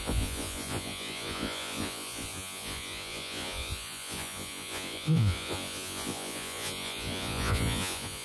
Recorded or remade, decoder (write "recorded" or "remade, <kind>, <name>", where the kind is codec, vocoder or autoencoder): remade, vocoder, Vocos